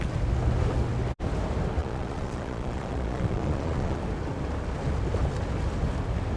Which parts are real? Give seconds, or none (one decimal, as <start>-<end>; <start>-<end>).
0.0-1.8; 4.0-6.4